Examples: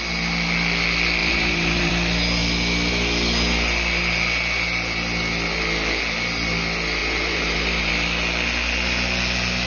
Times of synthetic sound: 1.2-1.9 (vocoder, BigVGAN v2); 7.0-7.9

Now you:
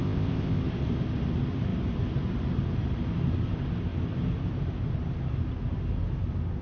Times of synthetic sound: 0.0-0.6 (codec, ZipCodec)

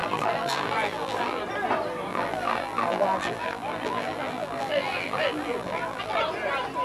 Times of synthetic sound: 0.0-1.4 (vocoder, BigVGAN v2); 2.1-6.2

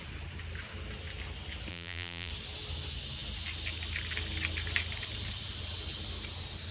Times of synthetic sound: 1.7-2.3 (vocoder, BigVGAN v2)